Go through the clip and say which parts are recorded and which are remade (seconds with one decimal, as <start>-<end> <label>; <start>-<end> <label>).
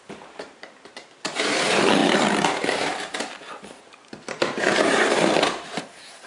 0.0-6.3 remade